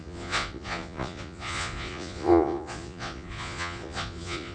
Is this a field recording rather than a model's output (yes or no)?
no